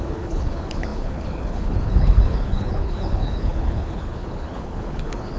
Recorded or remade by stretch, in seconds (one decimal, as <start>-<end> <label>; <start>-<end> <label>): 0.0-5.4 remade